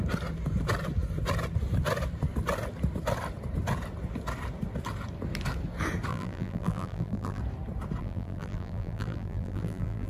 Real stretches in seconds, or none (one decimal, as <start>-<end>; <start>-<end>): 0.0-6.1; 7.4-8.0